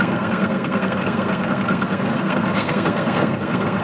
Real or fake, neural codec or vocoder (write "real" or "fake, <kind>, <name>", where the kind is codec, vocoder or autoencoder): fake, codec, SNAC